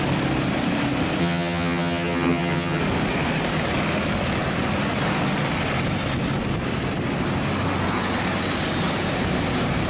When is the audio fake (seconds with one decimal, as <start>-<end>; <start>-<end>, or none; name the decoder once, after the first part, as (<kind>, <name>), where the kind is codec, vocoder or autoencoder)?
1.2-2.8 (vocoder, HiFi-GAN)